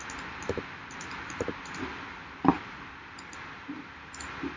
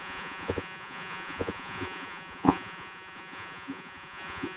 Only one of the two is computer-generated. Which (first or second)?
second